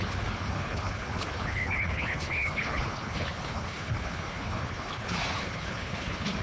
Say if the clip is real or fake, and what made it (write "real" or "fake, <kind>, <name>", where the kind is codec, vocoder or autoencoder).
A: fake, codec, HILCodec